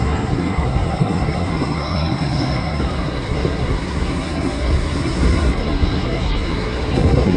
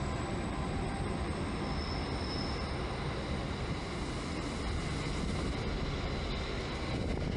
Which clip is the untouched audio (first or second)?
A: second